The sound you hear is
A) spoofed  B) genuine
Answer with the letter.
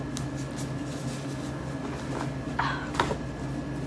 B